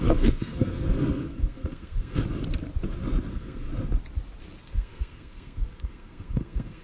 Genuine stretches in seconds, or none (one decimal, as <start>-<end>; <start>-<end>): 2.2-3.3; 3.7-4.6